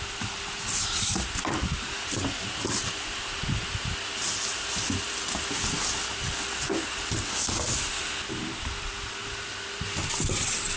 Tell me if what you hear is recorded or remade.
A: recorded